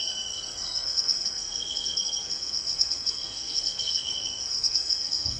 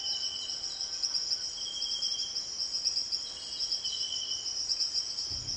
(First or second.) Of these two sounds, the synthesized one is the first